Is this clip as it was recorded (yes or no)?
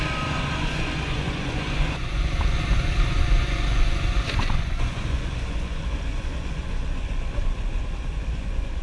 no